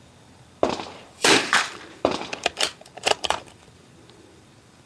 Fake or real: fake